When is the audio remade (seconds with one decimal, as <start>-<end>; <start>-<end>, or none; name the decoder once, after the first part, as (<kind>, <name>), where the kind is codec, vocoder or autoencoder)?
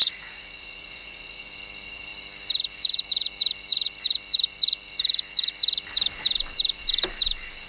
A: 0.0-1.5 (vocoder, Vocos)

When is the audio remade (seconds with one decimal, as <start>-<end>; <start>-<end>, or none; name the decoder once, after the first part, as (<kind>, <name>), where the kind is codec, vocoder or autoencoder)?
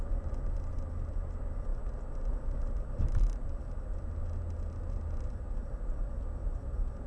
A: none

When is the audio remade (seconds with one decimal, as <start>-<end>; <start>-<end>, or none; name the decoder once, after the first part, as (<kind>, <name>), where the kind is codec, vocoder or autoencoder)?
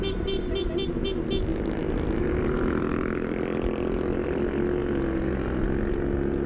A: none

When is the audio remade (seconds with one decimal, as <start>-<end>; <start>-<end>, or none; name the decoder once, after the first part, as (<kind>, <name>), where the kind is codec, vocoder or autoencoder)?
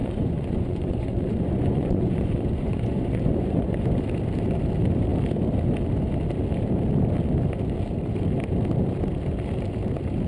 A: 0.0-3.8 (vocoder, Vocos)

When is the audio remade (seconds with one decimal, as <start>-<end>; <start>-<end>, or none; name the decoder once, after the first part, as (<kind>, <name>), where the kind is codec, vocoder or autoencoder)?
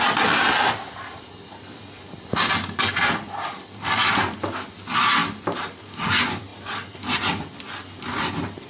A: none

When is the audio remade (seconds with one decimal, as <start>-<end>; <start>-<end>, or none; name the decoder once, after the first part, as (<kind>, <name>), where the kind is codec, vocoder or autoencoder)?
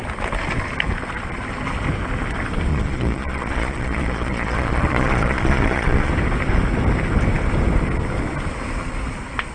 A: 2.7-6.1 (vocoder, Vocos)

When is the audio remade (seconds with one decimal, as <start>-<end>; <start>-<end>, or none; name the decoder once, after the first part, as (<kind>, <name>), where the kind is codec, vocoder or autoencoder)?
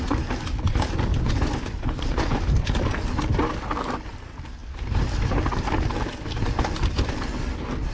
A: 1.1-2.4 (vocoder, Vocos)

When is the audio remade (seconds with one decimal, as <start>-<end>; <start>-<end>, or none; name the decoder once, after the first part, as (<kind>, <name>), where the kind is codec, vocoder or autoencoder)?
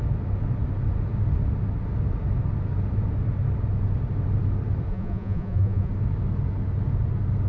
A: 4.9-5.9 (vocoder, Vocos)